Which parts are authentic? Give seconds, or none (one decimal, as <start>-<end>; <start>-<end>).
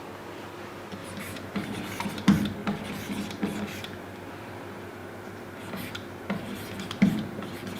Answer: 0.0-1.0; 2.0-5.0